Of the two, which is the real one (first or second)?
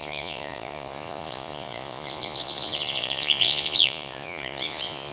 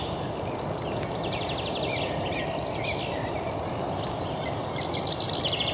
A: second